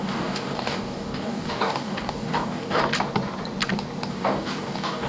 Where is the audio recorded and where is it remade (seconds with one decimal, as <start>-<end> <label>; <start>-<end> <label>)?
0.0-2.8 remade; 2.8-4.1 recorded; 4.1-5.1 remade